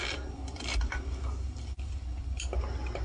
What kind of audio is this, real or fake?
real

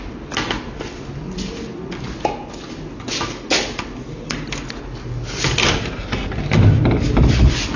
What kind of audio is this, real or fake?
real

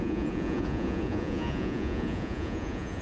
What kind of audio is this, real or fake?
fake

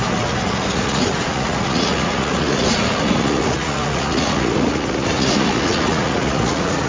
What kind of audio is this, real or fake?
fake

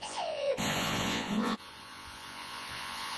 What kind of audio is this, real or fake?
fake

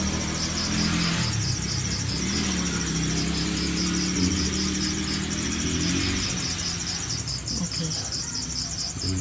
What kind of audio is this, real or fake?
real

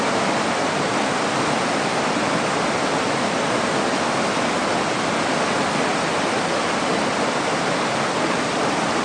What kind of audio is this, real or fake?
real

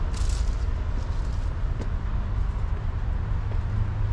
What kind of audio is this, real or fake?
real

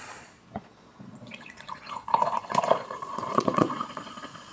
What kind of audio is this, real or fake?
fake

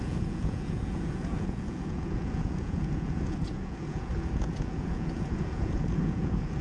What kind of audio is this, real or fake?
fake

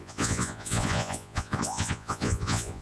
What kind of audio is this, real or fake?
fake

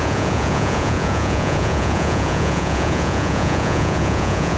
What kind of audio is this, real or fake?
fake